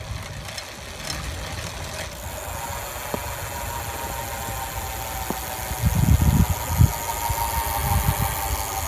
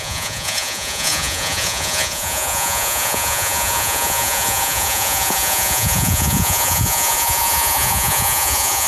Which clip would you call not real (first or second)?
second